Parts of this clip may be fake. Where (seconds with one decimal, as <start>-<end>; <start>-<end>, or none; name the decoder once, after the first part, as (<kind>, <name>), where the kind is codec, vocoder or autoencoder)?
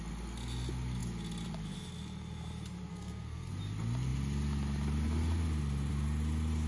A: 2.9-3.5 (codec, SNAC)